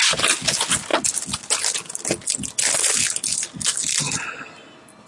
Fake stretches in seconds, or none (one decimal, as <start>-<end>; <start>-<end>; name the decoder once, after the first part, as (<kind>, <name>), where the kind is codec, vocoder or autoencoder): none